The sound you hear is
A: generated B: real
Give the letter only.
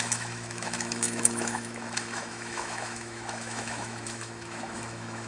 A